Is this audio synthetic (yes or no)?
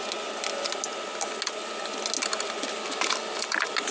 no